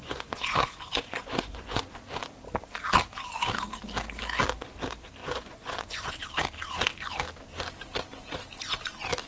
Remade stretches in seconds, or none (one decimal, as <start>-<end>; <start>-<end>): 0.0-1.8; 5.2-6.1